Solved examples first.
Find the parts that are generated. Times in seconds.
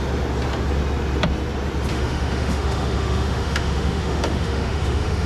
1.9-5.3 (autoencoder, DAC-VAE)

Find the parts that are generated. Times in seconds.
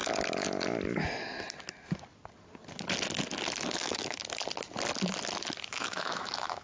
3.8-4.2 (autoencoder, DAC-VAE); 5.7-6.6